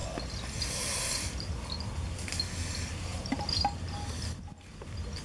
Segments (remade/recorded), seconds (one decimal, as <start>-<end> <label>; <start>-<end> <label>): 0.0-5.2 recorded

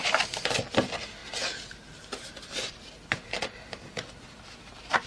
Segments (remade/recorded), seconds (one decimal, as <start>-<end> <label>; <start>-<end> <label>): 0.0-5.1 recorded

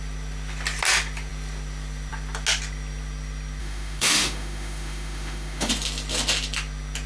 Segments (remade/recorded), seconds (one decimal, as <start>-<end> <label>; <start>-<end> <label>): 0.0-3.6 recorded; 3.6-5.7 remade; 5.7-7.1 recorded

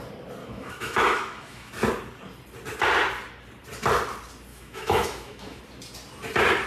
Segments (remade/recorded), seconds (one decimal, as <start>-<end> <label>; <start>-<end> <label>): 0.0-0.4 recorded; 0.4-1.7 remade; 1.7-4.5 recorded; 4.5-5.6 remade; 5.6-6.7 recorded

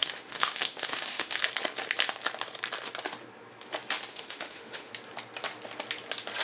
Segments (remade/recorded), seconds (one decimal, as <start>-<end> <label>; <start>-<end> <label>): 0.0-1.4 remade; 1.4-4.1 recorded; 4.1-4.9 remade; 4.9-6.4 recorded

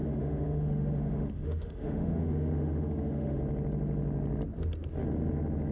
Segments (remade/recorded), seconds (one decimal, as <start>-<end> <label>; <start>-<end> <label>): 0.0-3.4 remade; 3.4-5.7 recorded

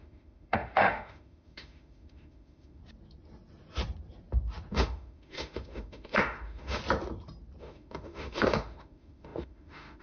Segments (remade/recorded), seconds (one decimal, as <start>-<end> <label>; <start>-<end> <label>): 0.0-2.8 remade; 2.8-4.7 recorded; 4.7-6.8 remade; 6.8-7.6 recorded; 7.6-10.0 remade

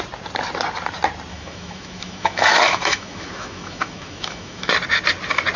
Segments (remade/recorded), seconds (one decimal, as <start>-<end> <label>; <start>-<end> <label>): 0.0-1.3 recorded; 1.3-4.7 remade; 4.7-5.6 recorded